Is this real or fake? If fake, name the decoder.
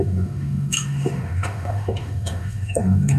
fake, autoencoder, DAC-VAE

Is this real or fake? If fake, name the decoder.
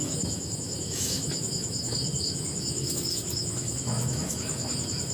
fake, autoencoder, DAC-VAE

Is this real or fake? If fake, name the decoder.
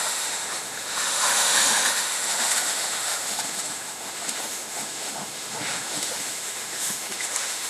fake, autoencoder, DAC-VAE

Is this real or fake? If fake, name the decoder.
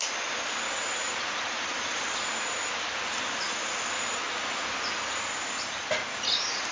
real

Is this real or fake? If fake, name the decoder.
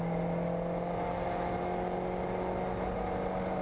real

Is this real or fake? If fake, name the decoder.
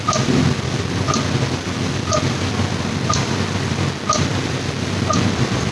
real